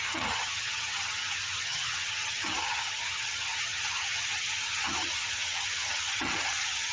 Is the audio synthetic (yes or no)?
yes